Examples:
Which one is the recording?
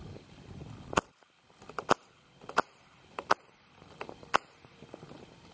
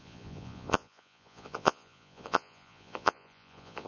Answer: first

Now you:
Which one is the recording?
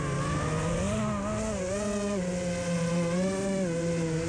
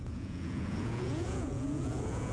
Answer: first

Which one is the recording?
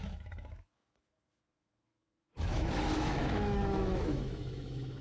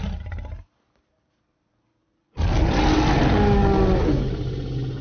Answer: second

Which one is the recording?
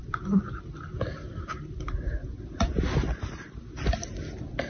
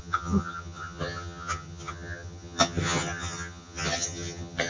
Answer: first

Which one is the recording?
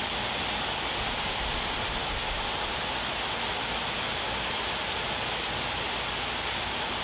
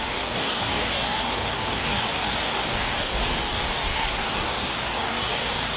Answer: first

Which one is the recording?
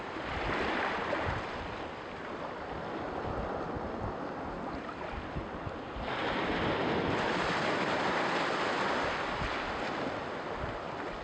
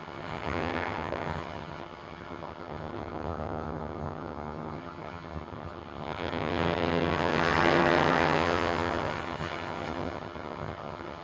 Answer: first